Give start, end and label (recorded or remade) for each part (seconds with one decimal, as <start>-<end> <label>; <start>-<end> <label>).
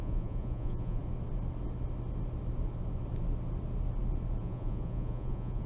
0.0-1.0 remade; 1.0-4.4 recorded; 4.4-5.7 remade